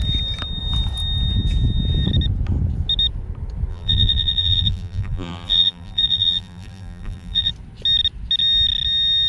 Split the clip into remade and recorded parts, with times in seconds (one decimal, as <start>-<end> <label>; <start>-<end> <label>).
0.0-3.7 recorded; 3.7-7.5 remade; 7.5-9.3 recorded